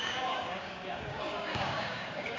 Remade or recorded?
remade